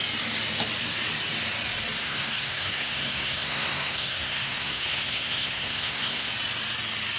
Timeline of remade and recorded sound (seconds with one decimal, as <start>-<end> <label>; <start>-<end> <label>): 0.0-2.0 recorded; 2.0-6.3 remade; 6.3-7.2 recorded